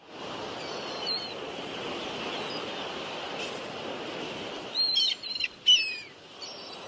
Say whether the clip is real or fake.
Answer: real